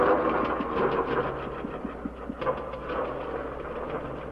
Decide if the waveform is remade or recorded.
recorded